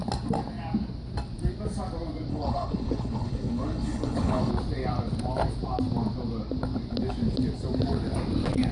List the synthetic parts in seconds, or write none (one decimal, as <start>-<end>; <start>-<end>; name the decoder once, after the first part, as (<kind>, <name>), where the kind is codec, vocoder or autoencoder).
2.3-4.5 (codec, HILCodec)